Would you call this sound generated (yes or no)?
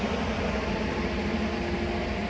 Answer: no